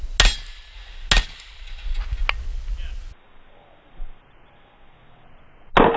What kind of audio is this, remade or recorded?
recorded